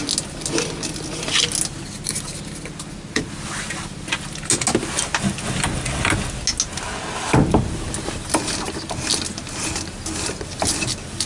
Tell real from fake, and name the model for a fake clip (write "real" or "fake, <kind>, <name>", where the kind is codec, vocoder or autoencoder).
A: real